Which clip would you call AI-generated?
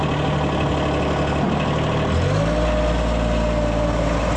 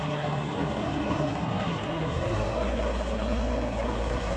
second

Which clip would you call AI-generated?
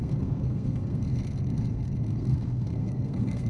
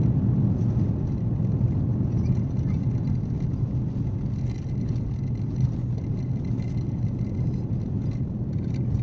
first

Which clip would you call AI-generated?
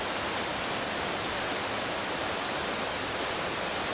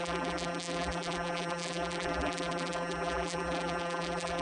second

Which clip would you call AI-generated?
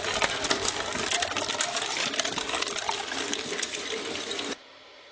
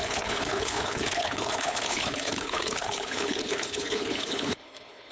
second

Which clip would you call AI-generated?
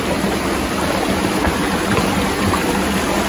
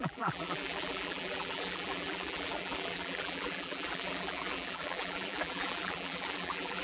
second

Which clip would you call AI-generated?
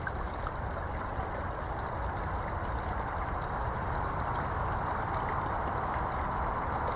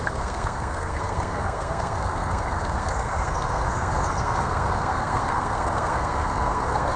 second